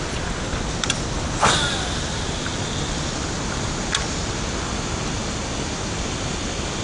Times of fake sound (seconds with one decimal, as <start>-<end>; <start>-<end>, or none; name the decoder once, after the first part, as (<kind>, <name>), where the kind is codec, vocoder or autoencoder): none